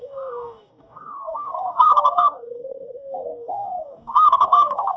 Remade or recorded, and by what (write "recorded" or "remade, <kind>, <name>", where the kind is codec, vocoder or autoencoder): remade, codec, DAC